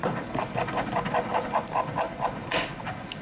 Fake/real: real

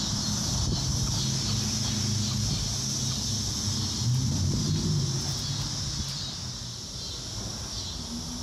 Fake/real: real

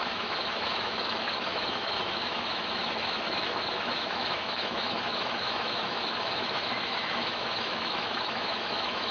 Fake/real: fake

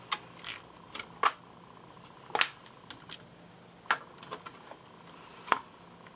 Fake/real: real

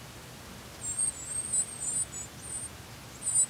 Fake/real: real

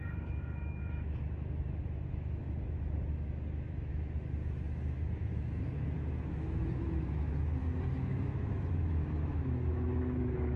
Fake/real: fake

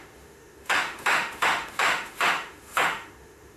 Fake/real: fake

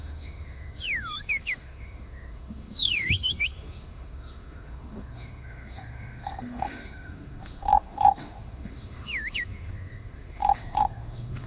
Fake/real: fake